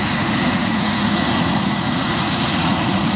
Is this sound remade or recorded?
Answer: remade